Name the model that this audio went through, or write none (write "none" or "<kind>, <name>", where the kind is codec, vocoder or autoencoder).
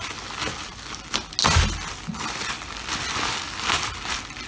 none